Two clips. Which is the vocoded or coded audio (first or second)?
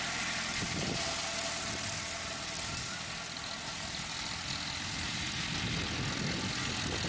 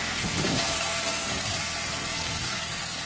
second